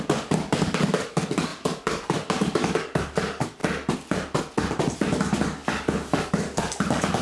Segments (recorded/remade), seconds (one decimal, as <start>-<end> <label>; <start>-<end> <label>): 0.0-3.6 remade; 3.6-5.1 recorded; 5.1-7.2 remade